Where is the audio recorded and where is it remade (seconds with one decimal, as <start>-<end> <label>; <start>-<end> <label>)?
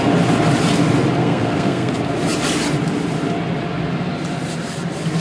0.0-1.2 recorded; 1.2-1.9 remade; 1.9-5.2 recorded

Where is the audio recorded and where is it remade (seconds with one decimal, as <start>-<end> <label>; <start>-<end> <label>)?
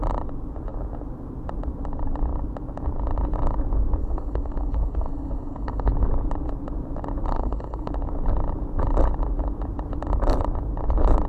0.0-4.0 recorded; 4.0-5.9 remade; 5.9-7.3 recorded; 7.3-7.9 remade; 7.9-11.3 recorded